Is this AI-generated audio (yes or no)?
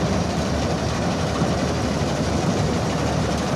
yes